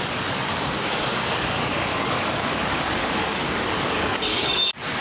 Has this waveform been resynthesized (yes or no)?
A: yes